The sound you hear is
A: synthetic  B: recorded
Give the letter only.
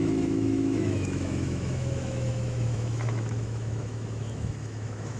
A